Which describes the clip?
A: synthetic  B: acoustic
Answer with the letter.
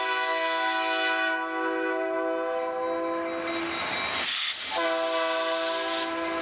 B